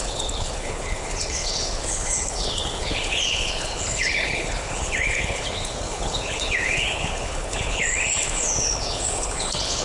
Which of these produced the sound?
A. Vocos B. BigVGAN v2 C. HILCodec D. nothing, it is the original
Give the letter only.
C